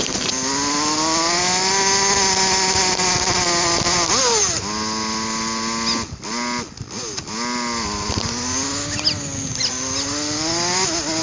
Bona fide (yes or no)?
yes